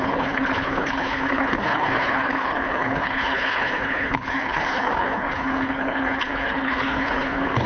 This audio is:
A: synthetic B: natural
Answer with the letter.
A